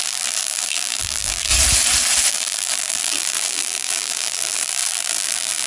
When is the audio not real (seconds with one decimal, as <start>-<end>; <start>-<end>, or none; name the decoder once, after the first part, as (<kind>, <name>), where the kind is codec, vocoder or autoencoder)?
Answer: 0.0-1.5 (vocoder, BigVGAN v2); 2.3-5.7